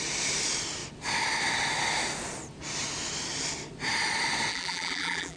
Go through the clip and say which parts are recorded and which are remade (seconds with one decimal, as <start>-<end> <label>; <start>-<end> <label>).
0.0-4.5 recorded; 4.5-5.4 remade